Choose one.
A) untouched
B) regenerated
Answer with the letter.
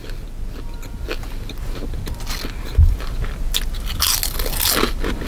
A